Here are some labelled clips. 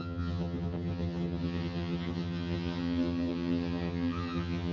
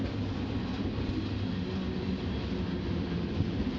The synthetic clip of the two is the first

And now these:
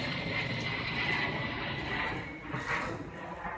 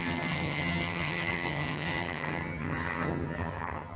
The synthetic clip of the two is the second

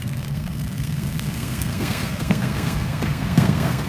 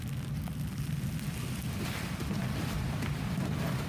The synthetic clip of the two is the first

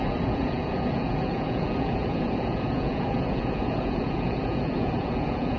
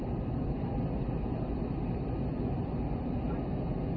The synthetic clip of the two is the first